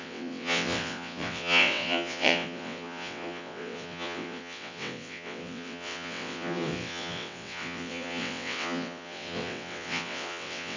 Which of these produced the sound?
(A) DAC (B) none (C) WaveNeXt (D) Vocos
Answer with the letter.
C